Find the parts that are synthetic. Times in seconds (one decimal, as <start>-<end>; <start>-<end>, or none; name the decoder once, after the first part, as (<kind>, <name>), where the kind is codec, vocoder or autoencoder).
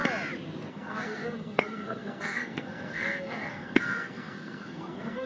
0.7-5.3 (codec, SNAC)